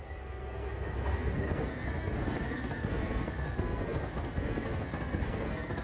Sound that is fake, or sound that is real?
fake